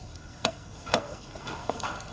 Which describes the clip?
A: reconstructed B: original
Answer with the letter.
A